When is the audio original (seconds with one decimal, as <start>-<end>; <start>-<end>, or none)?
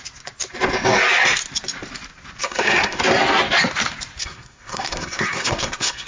0.0-2.4; 3.0-4.2